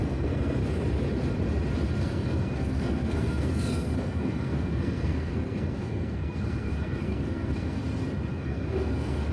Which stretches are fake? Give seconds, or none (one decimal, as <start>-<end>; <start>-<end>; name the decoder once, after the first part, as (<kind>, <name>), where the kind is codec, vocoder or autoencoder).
0.0-0.6 (codec, SNAC); 2.0-7.8; 8.3-9.3